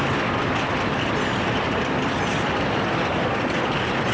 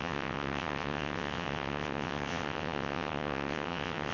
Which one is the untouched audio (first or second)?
first